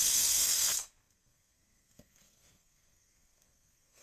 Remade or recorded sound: remade